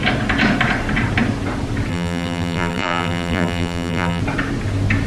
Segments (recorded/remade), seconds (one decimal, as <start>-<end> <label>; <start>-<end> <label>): 0.0-1.9 recorded; 1.9-4.2 remade; 4.2-5.1 recorded